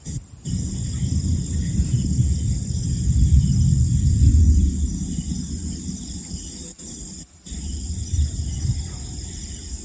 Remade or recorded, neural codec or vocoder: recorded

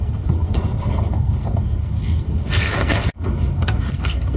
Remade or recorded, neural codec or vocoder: remade, codec, SNAC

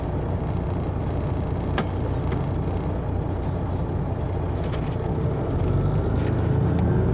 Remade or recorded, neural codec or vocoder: recorded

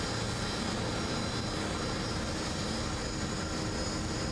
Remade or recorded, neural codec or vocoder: recorded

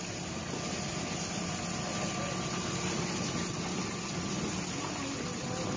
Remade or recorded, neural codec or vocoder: recorded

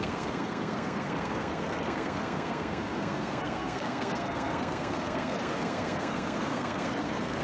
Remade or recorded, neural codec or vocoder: remade, codec, SNAC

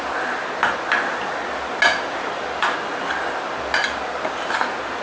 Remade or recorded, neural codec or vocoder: recorded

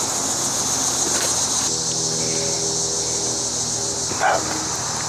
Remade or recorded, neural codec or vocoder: recorded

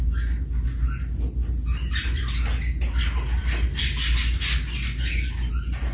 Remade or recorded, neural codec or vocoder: recorded